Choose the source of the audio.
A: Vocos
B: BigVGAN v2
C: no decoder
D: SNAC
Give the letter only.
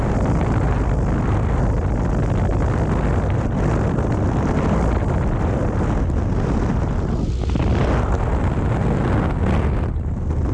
C